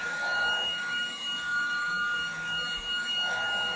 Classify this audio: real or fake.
fake